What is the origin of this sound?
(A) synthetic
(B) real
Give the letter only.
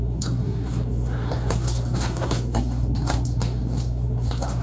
A